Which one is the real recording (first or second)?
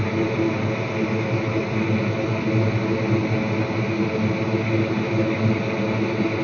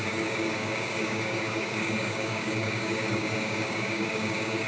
first